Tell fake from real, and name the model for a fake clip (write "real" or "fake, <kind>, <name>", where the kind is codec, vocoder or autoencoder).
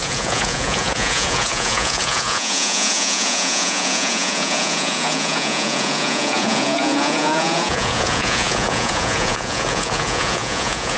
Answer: fake, vocoder, Vocos